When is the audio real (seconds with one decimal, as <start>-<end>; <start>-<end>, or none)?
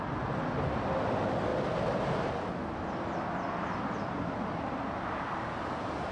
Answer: 0.0-1.5; 2.3-6.1